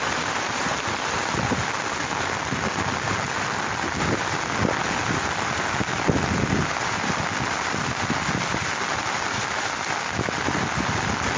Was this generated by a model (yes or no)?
no